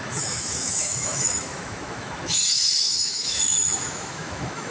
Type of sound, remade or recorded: remade